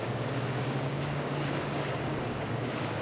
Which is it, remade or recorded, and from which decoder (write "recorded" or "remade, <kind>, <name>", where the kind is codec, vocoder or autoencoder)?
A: remade, codec, DAC